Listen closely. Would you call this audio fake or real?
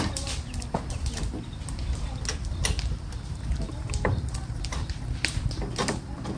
real